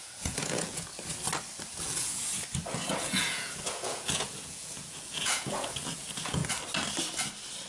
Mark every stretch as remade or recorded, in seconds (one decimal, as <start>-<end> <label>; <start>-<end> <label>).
0.0-0.9 remade; 0.9-1.7 recorded; 1.7-2.4 remade; 2.4-3.0 recorded; 3.0-6.4 remade; 6.4-7.7 recorded